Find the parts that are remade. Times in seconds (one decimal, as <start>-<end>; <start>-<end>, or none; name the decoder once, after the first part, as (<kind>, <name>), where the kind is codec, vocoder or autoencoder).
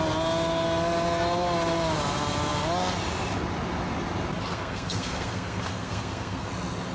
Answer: 4.5-6.5 (codec, SNAC)